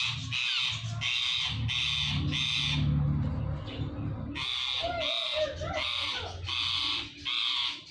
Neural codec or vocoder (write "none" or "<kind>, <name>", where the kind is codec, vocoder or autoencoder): none